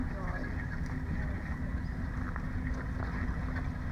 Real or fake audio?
real